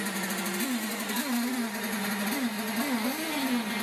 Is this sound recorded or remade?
recorded